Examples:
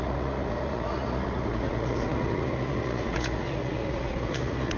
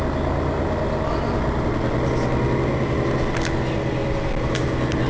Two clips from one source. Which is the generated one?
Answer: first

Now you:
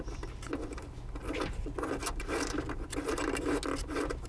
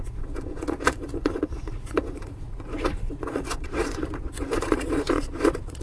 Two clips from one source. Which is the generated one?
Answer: second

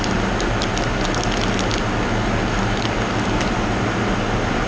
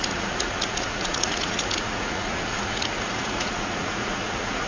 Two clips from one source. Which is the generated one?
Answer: second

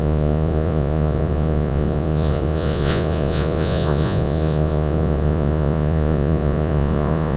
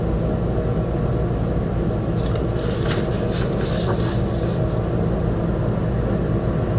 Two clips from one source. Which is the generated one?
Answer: first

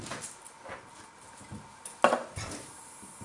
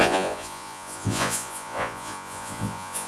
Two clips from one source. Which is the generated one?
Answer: second